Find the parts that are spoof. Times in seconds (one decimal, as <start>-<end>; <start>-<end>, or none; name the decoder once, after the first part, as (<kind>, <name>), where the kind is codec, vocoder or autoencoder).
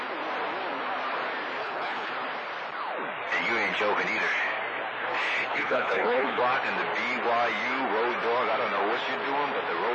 1.6-2.1 (codec, HILCodec); 5.5-6.4